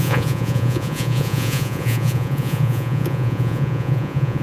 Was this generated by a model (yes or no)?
yes